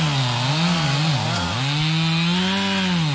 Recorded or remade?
recorded